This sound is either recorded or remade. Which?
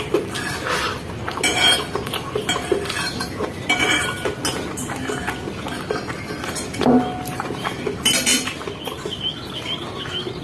recorded